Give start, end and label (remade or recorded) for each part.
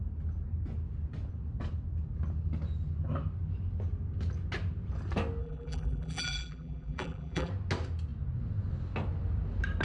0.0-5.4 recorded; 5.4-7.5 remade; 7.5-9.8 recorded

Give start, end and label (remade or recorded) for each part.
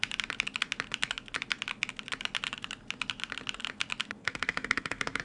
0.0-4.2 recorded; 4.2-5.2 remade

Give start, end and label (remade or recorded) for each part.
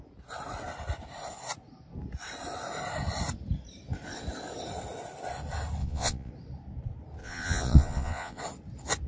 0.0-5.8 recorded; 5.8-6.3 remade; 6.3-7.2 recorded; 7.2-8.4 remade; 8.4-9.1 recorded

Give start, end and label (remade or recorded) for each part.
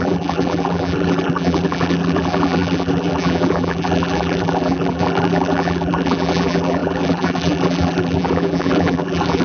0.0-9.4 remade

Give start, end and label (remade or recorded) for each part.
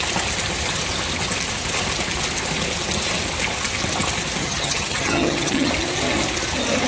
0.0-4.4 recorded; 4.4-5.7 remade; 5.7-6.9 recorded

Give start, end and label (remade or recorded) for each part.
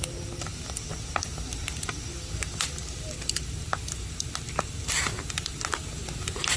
0.0-6.6 recorded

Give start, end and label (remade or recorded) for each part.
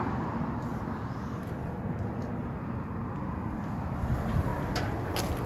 0.0-0.7 remade; 0.7-4.0 recorded; 4.0-4.5 remade; 4.5-5.5 recorded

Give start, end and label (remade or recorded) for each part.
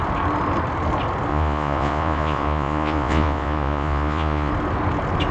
0.0-1.3 recorded; 1.3-4.5 remade; 4.5-5.3 recorded